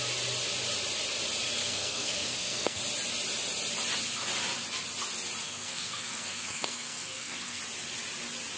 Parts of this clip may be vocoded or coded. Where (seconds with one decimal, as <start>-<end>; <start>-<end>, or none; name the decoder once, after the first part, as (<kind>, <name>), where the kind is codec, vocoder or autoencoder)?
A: 1.6-2.8 (codec, SNAC); 5.4-7.6